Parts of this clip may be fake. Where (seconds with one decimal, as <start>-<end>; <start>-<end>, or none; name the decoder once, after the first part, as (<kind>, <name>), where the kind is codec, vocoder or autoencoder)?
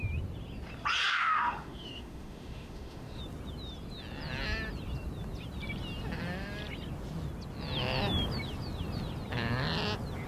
1.1-3.2 (autoencoder, DAC-VAE)